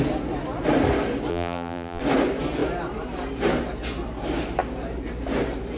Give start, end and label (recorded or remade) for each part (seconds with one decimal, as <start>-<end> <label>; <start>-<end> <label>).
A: 0.0-1.3 recorded; 1.3-2.0 remade; 2.0-5.8 recorded